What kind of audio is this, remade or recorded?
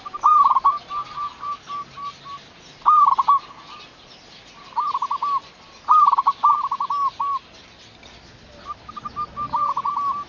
recorded